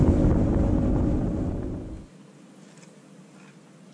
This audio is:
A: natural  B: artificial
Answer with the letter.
A